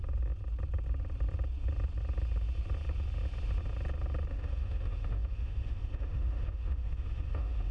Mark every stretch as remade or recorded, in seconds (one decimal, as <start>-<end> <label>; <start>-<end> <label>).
0.0-4.3 recorded; 4.3-7.7 remade